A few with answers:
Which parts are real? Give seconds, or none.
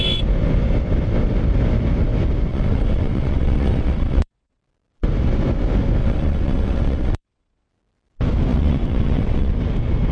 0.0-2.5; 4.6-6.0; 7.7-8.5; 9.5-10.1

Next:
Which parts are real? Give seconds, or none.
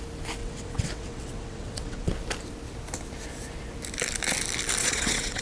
0.0-0.4; 2.1-4.8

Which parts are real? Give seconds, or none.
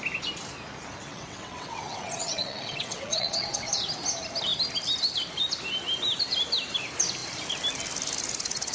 0.0-1.1; 3.7-8.7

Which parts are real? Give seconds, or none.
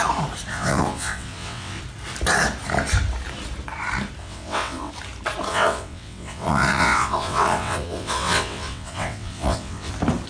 0.0-0.5; 1.8-4.2; 4.9-5.5; 9.9-10.3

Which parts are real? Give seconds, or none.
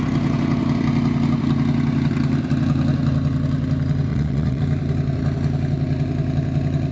0.0-4.1; 4.6-6.9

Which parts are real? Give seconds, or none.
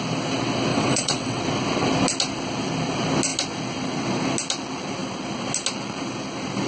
0.0-0.7; 1.4-6.7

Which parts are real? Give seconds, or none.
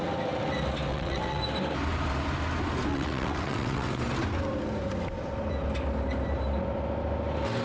0.0-0.9; 1.4-2.9; 4.0-7.6